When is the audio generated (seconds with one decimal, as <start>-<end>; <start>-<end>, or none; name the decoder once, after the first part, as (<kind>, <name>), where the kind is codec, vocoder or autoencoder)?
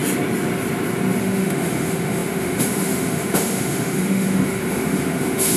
1.2-5.6 (autoencoder, DAC-VAE)